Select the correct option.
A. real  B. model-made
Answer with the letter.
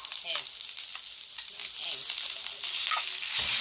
A